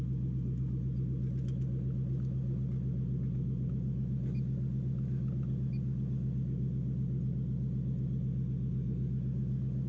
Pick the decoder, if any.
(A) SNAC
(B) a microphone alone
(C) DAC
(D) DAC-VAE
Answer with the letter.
B